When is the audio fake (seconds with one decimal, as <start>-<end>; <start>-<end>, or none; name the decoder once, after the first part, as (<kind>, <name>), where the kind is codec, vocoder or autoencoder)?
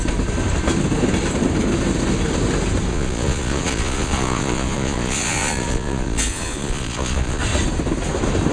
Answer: 2.9-7.4 (vocoder, Vocos)